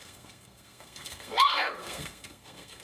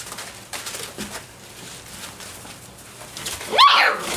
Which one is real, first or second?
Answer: second